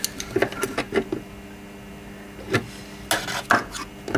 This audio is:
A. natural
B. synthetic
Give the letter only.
A